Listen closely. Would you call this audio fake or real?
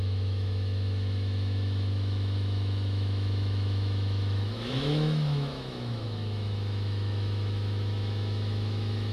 fake